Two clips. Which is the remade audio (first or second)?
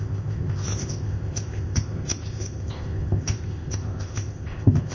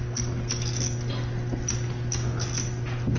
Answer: first